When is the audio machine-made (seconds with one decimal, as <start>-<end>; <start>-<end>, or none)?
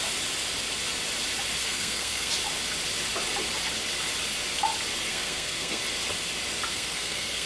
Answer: 1.6-2.3; 5.1-5.8; 6.7-7.5